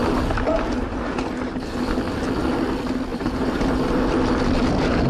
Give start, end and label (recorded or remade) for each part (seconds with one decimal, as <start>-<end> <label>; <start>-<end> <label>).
0.0-3.1 recorded; 3.1-3.8 remade; 3.8-5.1 recorded